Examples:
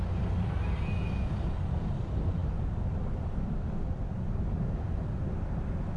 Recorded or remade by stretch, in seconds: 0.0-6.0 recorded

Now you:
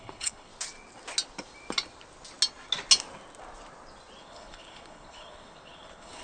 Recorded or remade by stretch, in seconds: 0.0-0.5 remade; 0.5-4.2 recorded; 4.2-6.2 remade

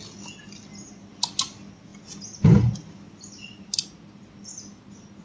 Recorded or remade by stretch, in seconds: 0.0-5.2 recorded

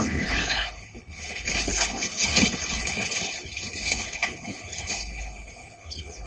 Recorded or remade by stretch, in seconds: 0.0-6.3 remade

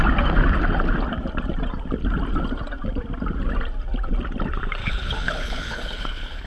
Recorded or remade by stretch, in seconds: 0.0-4.8 recorded; 4.8-6.5 remade